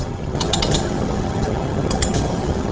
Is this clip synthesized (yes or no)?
yes